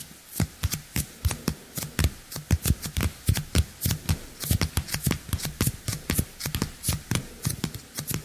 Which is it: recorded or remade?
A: recorded